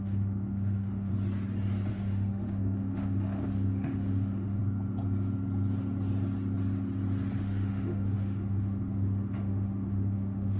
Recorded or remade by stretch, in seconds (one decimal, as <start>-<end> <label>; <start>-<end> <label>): 0.0-1.1 remade; 1.1-1.9 recorded; 1.9-4.6 remade; 4.6-7.4 recorded; 7.4-10.6 remade